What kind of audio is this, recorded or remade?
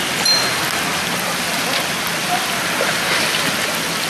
recorded